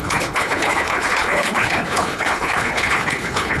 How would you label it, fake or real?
fake